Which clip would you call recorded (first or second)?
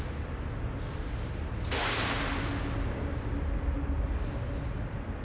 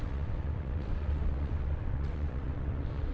first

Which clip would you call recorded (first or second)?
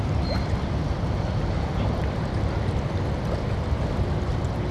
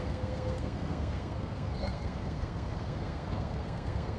first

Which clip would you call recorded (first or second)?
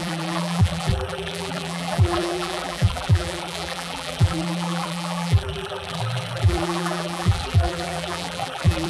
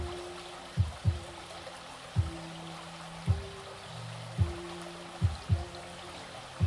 second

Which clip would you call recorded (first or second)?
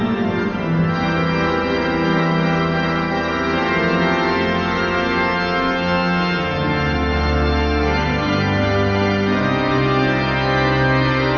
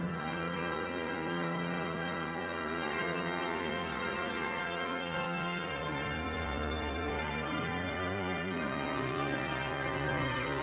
first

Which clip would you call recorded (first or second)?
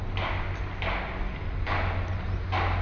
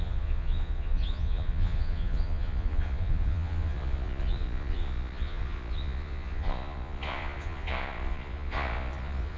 first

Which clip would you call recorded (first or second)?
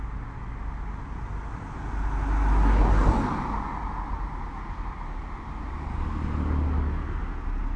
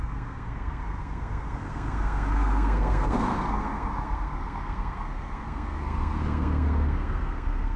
first